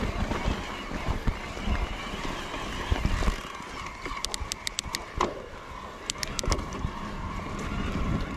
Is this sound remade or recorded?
recorded